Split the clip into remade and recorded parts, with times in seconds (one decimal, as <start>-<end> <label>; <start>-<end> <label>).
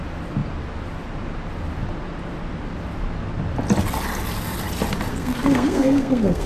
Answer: 0.0-5.1 recorded; 5.1-6.5 remade